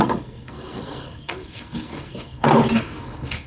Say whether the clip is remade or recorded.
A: remade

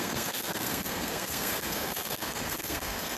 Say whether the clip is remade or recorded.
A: remade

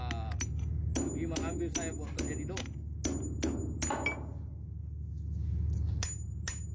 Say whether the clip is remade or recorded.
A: recorded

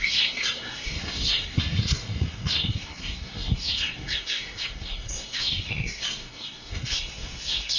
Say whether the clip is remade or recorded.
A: remade